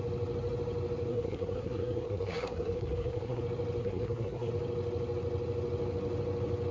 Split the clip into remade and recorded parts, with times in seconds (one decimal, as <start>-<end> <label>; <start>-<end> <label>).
0.0-1.1 recorded; 1.1-3.4 remade; 3.4-3.8 recorded; 3.8-4.5 remade; 4.5-6.7 recorded